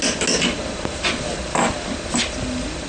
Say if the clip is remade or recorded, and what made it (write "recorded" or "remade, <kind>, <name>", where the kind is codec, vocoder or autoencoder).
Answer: recorded